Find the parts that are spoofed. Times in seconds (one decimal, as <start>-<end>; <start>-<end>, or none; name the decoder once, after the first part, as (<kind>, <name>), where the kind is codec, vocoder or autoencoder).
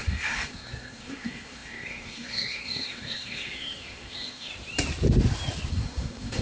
0.0-4.5 (codec, SNAC); 5.7-6.4